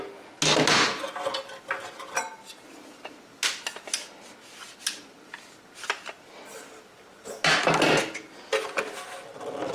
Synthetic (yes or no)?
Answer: no